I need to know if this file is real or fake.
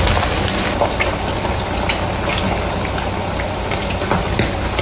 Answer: real